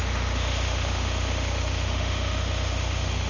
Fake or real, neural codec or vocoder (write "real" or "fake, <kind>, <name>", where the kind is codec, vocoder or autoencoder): fake, autoencoder, DAC-VAE